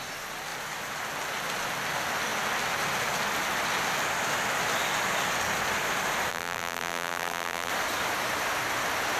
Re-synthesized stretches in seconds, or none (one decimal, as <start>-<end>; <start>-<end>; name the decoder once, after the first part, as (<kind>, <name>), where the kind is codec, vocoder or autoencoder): 6.3-7.7 (vocoder, BigVGAN v2)